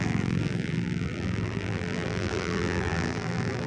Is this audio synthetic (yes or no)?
yes